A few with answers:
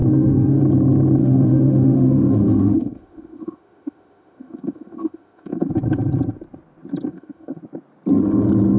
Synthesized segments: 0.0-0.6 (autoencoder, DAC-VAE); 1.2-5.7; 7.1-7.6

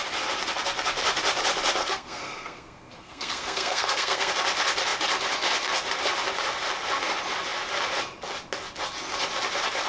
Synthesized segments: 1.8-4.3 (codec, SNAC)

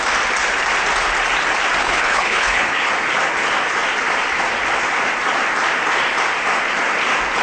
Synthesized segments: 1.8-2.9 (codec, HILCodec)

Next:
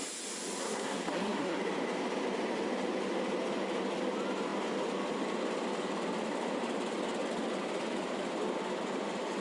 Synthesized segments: 0.6-1.6 (codec, SNAC)

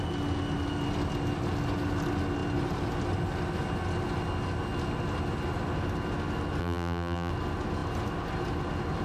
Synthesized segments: 6.6-7.3 (vocoder, BigVGAN v2)